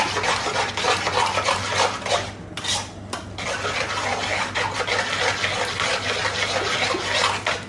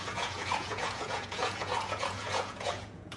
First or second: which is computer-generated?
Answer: second